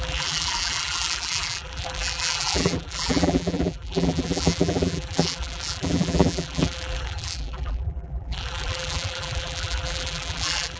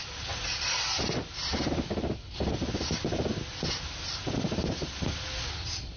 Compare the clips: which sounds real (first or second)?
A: second